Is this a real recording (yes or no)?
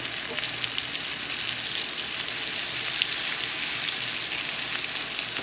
yes